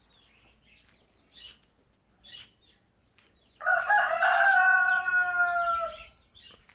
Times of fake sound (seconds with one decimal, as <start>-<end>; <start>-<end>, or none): 3.0-3.9; 4.5-5.1